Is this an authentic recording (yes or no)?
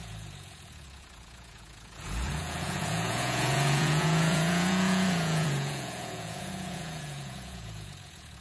no